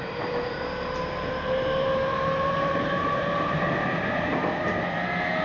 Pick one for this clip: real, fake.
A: fake